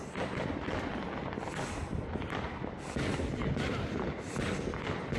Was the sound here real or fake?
real